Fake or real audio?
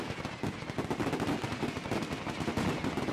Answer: real